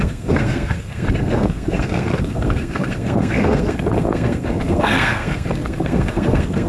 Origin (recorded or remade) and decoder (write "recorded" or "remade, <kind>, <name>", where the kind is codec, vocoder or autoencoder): remade, codec, SNAC